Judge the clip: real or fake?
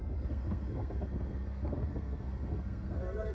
fake